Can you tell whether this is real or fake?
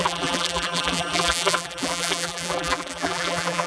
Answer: fake